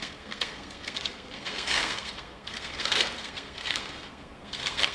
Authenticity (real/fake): fake